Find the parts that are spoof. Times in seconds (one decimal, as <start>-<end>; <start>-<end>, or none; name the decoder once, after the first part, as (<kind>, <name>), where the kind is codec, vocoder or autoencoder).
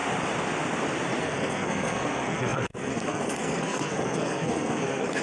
1.2-5.2 (codec, SNAC)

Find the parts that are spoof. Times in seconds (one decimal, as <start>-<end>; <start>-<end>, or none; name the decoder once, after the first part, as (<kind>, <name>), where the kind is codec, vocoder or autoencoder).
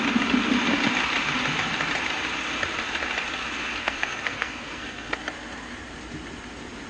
3.8-5.2 (codec, SNAC)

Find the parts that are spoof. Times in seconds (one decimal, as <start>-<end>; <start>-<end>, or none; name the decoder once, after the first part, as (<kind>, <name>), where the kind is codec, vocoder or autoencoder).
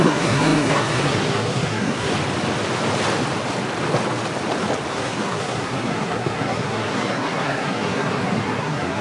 0.0-2.1 (codec, SNAC); 4.9-9.0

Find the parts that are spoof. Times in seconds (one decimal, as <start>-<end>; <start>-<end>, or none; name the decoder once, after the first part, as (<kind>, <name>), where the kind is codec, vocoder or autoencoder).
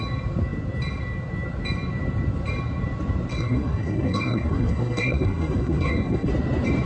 3.3-6.3 (codec, SNAC)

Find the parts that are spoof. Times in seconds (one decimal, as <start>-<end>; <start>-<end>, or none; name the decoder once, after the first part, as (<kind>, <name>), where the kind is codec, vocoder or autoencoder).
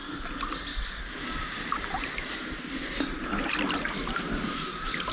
none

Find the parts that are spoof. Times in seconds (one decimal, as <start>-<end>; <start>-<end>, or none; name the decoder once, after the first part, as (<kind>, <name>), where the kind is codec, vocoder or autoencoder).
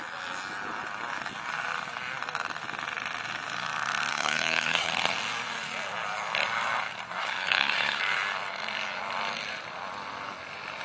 4.1-4.9 (codec, SNAC); 7.2-8.0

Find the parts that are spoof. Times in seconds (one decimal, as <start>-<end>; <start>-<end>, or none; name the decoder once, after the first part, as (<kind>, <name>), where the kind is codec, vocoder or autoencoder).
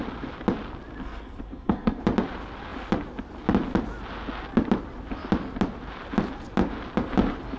1.0-2.0 (codec, SNAC)